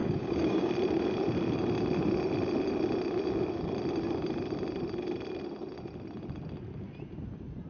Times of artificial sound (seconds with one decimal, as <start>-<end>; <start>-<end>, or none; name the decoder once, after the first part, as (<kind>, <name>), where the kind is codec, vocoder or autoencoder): 0.0-0.7 (codec, DAC)